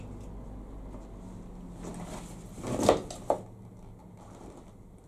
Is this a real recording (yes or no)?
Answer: yes